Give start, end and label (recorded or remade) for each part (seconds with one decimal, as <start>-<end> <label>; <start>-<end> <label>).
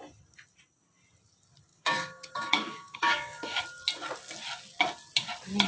0.0-1.7 recorded; 1.7-3.6 remade; 3.6-5.7 recorded